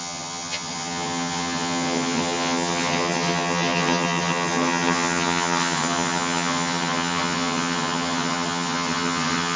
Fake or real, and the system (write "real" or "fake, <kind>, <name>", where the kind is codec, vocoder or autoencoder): fake, vocoder, HiFi-GAN